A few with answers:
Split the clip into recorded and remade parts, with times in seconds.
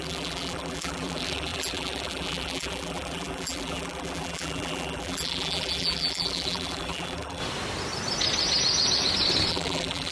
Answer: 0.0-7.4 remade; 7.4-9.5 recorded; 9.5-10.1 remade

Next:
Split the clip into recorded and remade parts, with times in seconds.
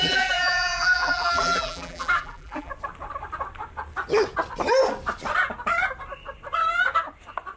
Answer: 0.0-2.7 remade; 2.7-7.6 recorded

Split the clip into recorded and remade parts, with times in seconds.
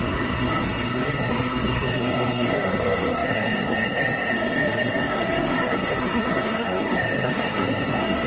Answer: 0.0-8.3 remade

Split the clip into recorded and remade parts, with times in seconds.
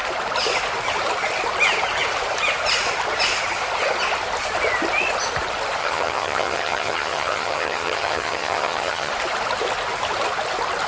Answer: 0.0-5.8 recorded; 5.8-9.1 remade; 9.1-10.9 recorded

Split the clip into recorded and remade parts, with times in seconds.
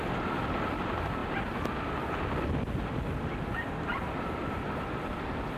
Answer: 0.0-5.6 recorded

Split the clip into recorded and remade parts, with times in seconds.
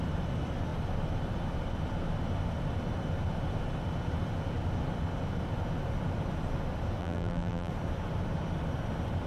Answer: 0.0-7.0 recorded; 7.0-7.7 remade; 7.7-9.3 recorded